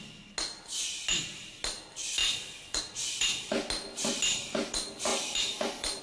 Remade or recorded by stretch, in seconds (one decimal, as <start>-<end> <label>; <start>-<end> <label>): 0.0-5.1 recorded; 5.1-6.0 remade